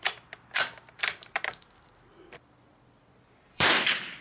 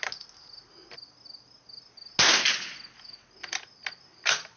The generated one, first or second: first